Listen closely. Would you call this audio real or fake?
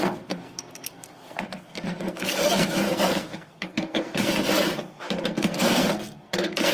fake